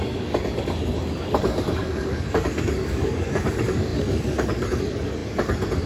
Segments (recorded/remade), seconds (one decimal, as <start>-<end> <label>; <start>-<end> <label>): 0.0-5.9 remade